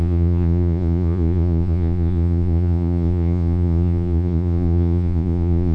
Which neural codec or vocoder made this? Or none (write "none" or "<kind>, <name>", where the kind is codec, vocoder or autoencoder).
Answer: vocoder, Vocos